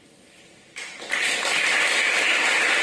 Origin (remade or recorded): recorded